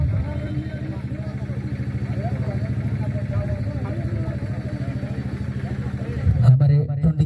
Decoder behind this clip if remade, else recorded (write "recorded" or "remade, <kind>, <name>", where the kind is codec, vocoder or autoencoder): recorded